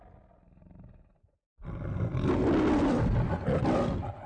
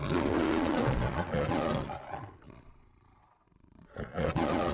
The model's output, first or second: second